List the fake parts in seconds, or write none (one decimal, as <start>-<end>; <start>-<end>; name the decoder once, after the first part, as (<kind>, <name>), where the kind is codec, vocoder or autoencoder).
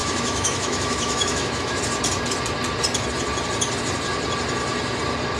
0.0-1.8 (autoencoder, DAC-VAE)